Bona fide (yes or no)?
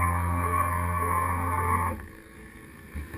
no